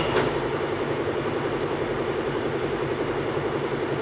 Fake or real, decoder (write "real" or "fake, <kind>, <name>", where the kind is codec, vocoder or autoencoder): real